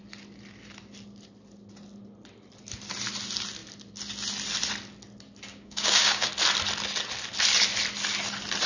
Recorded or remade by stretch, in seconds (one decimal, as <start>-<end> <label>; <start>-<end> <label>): 0.0-5.5 recorded; 5.5-6.3 remade; 6.3-8.7 recorded